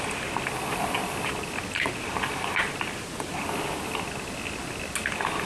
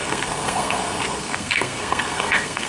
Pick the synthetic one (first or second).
second